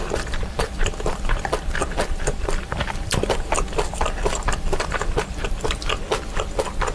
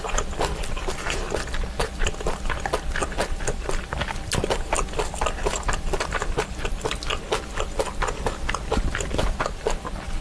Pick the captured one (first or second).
second